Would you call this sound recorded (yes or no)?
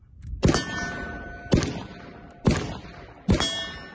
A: yes